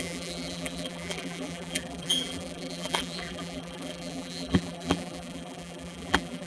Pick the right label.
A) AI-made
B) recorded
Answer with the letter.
A